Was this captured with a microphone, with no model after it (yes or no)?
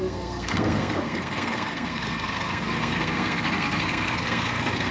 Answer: no